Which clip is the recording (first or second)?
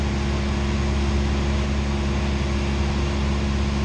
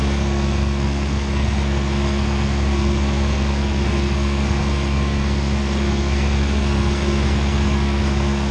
first